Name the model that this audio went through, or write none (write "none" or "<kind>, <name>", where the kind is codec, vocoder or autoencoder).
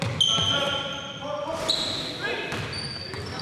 none